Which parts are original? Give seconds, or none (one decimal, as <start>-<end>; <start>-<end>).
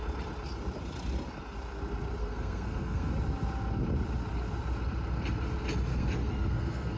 0.0-2.2; 3.1-5.9